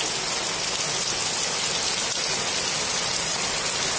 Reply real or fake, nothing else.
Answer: real